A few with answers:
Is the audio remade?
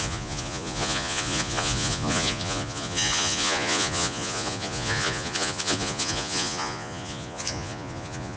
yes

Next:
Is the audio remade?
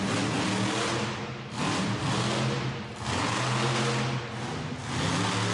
no